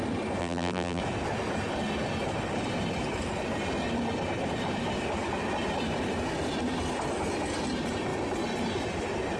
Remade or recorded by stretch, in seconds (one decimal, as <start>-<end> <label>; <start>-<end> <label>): 0.0-0.4 recorded; 0.4-1.0 remade; 1.0-9.4 recorded